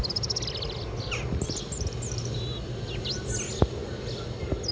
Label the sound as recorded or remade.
recorded